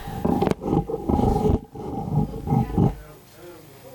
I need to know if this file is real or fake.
real